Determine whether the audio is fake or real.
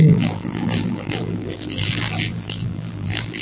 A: fake